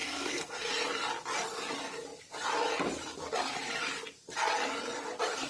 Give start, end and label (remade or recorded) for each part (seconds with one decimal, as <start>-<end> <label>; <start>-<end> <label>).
0.0-0.7 remade; 0.7-5.5 recorded